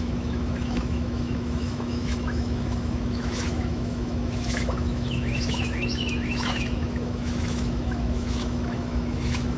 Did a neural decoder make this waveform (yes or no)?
yes